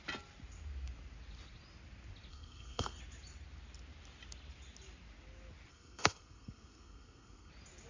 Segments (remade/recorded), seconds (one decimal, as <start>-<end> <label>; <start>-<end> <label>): 0.0-2.3 recorded; 2.3-3.0 remade; 3.0-5.7 recorded; 5.7-7.5 remade; 7.5-7.9 recorded